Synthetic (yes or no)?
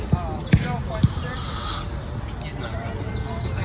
no